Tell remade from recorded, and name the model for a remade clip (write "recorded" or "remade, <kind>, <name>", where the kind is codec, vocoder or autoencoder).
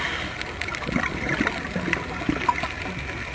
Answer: recorded